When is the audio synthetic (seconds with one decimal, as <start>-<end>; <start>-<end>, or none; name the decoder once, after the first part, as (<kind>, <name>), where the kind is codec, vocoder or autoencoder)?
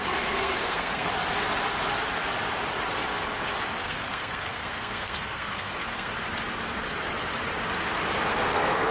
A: 0.0-1.1 (codec, SNAC); 3.8-6.1; 8.3-8.9